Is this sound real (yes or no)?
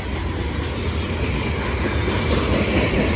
yes